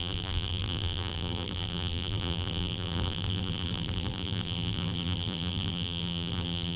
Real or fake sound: fake